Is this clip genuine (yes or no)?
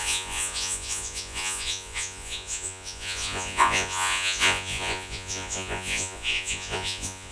no